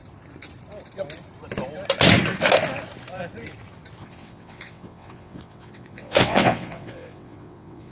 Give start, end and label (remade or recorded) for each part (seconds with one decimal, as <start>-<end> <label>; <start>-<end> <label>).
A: 0.0-4.0 recorded; 4.0-7.9 remade